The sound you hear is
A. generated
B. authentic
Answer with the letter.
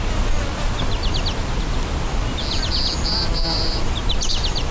B